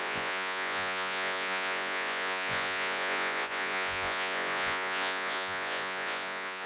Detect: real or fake fake